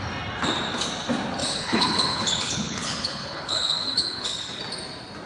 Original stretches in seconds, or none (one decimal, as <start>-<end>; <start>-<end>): 0.0-1.4; 4.6-5.3